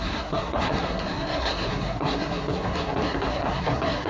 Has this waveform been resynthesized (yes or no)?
yes